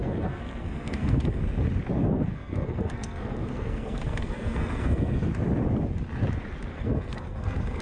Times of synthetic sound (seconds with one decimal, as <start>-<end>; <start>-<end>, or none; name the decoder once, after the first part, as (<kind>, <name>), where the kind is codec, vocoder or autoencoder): 0.0-1.4 (codec, SNAC); 2.0-5.3; 6.7-7.8